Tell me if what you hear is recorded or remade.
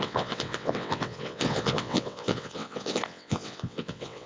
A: remade